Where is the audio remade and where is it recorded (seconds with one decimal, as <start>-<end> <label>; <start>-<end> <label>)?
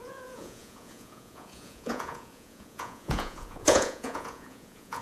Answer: 0.0-5.0 remade